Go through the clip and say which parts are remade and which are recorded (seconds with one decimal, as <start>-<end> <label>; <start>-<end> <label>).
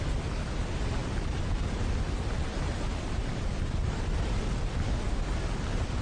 0.0-1.0 recorded; 1.0-4.6 remade; 4.6-6.0 recorded